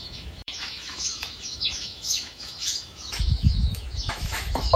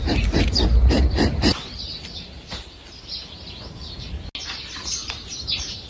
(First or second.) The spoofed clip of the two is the first